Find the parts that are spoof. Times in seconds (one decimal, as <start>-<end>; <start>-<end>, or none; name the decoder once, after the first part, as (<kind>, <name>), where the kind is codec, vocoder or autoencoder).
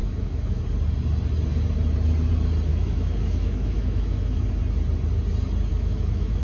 0.0-0.6 (autoencoder, DAC-VAE); 2.7-4.5; 5.7-6.4